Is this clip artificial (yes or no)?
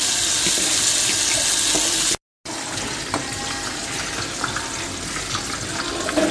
no